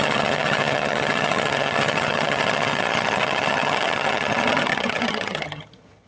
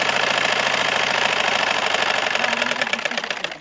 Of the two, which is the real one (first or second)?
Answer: second